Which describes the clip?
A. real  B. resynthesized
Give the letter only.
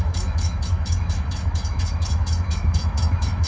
B